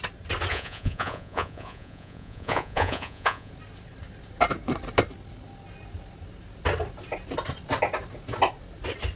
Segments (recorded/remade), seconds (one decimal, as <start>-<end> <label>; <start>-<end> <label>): 0.0-0.5 recorded; 0.5-3.5 remade; 3.5-9.2 recorded